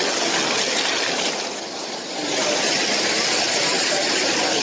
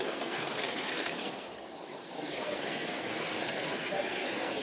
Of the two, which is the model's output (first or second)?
second